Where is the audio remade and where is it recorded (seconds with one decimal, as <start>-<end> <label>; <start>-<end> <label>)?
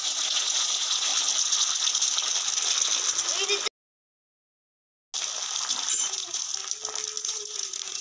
0.0-1.1 remade; 1.1-5.9 recorded; 5.9-6.5 remade; 6.5-7.2 recorded; 7.2-8.0 remade